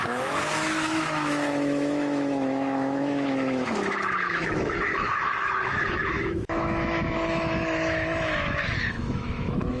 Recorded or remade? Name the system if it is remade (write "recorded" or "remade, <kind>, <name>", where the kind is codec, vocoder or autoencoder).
remade, autoencoder, DAC-VAE